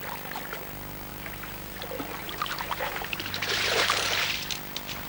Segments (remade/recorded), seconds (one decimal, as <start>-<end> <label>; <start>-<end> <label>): 0.0-1.1 recorded; 1.1-1.8 remade; 1.8-2.2 recorded; 2.2-4.2 remade; 4.2-5.1 recorded